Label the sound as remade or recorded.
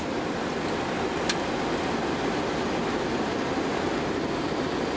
recorded